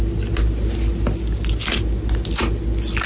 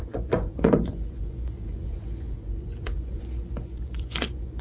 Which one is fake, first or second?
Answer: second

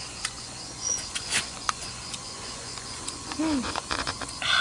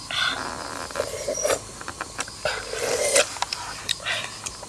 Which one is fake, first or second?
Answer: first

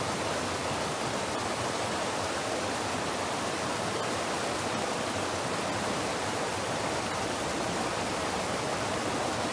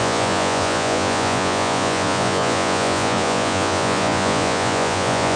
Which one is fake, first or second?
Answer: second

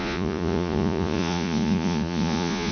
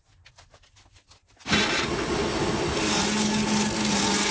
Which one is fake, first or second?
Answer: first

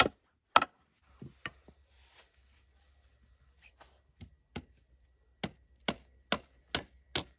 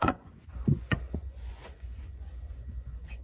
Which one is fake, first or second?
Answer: second